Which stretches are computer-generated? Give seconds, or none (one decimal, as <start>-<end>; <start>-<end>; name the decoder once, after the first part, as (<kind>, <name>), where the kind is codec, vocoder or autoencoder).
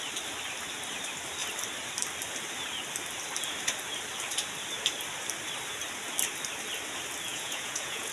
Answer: 7.3-8.1 (vocoder, Vocos)